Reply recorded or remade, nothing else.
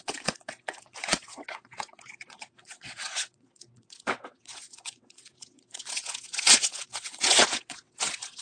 remade